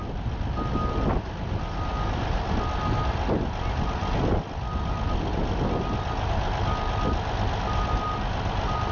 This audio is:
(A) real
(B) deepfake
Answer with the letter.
A